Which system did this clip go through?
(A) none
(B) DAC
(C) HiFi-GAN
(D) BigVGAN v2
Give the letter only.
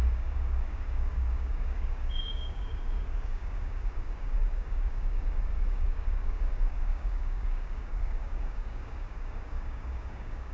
B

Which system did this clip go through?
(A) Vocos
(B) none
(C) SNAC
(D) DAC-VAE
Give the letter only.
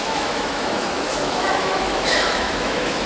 D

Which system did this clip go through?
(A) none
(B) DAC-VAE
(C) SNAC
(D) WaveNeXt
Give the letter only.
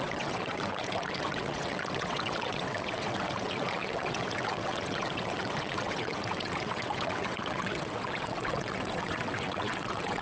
D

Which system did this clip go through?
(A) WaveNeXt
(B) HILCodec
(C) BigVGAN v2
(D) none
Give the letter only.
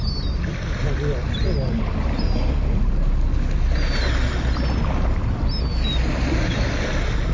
D